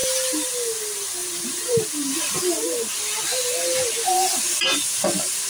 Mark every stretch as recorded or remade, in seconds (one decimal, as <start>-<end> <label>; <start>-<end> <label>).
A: 0.0-1.2 recorded; 1.2-1.8 remade; 1.8-5.5 recorded